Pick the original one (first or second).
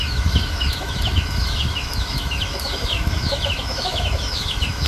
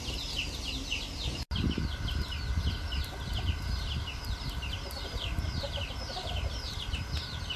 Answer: second